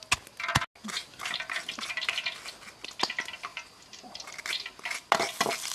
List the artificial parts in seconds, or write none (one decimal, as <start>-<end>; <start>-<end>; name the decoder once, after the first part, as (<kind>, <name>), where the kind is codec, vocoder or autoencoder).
1.0-2.1 (vocoder, BigVGAN v2); 3.5-4.7